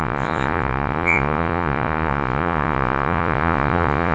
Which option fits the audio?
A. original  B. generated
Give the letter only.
B